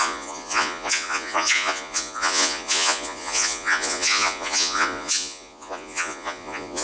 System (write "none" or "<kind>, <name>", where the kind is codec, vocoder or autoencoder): vocoder, Vocos